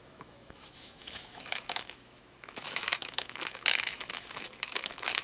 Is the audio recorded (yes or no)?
no